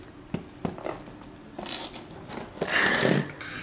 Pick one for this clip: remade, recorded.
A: recorded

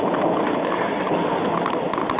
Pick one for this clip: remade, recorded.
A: remade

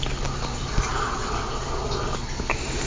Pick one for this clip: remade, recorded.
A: recorded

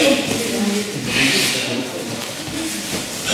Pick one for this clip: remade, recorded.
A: recorded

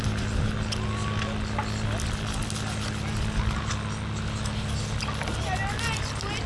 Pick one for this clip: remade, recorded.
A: recorded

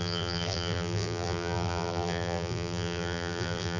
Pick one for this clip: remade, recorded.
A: remade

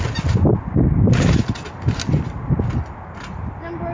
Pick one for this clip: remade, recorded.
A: recorded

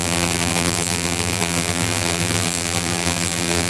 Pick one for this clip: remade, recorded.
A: remade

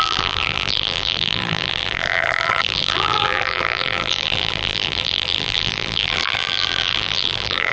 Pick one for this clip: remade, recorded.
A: remade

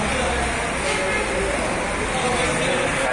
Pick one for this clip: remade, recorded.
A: recorded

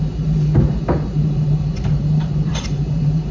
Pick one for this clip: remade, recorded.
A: remade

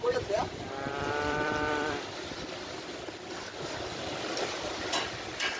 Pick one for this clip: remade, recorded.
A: remade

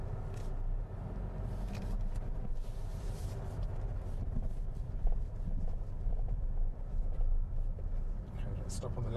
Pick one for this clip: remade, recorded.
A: recorded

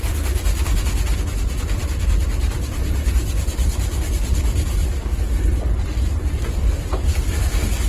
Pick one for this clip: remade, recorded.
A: remade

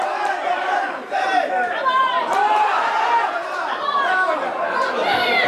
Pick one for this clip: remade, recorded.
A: remade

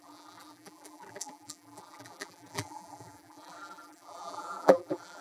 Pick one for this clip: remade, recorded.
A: remade